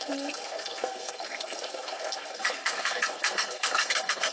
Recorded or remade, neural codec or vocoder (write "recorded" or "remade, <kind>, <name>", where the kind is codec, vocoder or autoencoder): remade, codec, SNAC